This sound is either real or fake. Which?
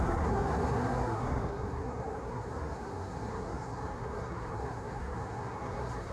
fake